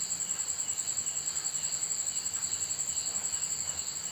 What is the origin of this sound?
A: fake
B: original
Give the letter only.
B